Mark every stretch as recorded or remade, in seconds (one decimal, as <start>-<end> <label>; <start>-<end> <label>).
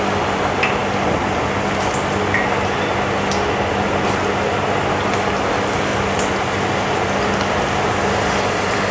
0.0-0.8 remade; 0.8-4.9 recorded; 4.9-5.9 remade; 5.9-8.4 recorded; 8.4-8.9 remade